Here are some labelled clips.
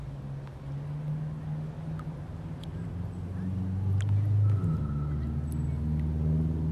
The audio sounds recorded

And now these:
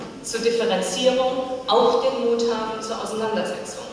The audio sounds recorded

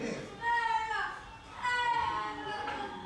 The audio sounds recorded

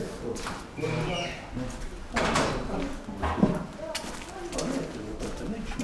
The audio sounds recorded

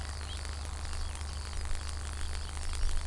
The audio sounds recorded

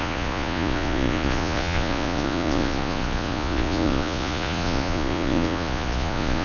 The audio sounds remade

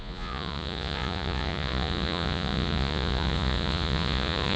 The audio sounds remade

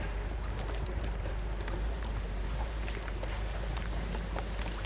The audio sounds recorded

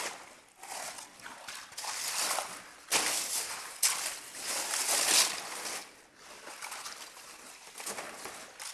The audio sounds recorded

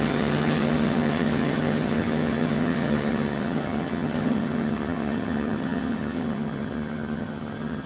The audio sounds remade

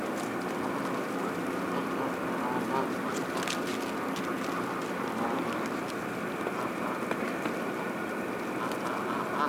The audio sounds recorded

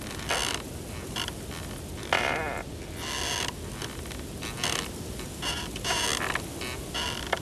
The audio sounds recorded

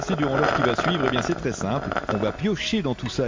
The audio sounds recorded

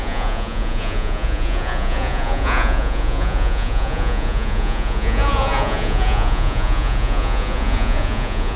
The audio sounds remade